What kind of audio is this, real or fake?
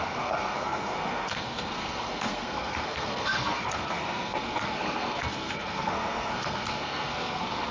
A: fake